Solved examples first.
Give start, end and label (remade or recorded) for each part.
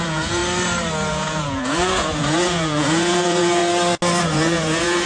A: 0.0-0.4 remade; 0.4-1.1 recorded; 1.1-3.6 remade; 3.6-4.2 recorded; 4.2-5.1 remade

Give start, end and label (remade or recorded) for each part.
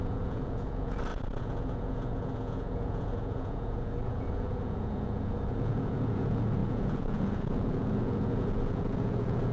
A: 0.0-9.5 remade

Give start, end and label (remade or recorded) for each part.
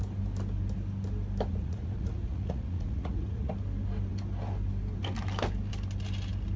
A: 0.0-1.5 recorded; 1.5-3.5 remade; 3.5-6.6 recorded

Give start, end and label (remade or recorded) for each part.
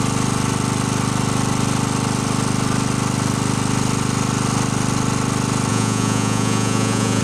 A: 0.0-5.7 recorded; 5.7-7.2 remade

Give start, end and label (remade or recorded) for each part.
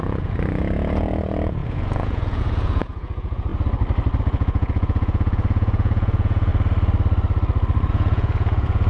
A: 0.0-3.5 remade; 3.5-4.2 recorded; 4.2-6.5 remade; 6.5-7.9 recorded; 7.9-8.9 remade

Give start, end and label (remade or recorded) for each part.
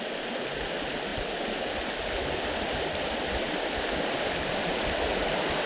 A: 0.0-5.7 recorded